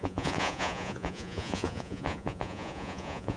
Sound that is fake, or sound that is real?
fake